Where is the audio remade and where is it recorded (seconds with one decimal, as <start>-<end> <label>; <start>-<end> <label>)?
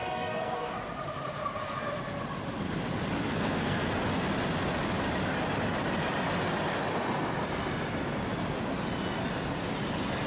0.0-0.7 remade; 0.7-3.3 recorded; 3.3-3.9 remade; 3.9-10.3 recorded